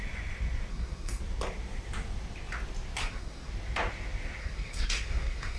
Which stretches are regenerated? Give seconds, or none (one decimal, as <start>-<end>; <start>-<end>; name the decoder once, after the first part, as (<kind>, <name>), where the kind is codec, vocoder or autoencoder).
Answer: 0.7-1.2 (codec, SNAC); 3.0-3.5; 4.4-5.6